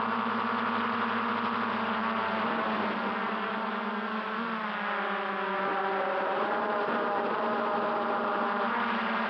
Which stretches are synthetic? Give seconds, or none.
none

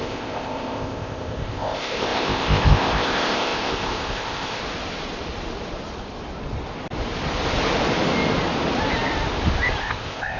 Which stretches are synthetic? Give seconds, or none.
0.0-4.6 (codec, ZipCodec); 9.8-10.4

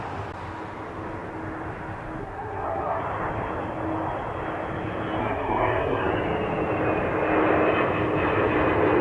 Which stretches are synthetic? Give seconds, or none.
2.2-3.0 (codec, SNAC); 5.2-6.1